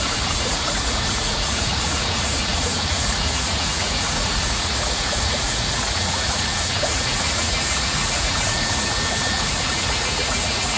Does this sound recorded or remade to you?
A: remade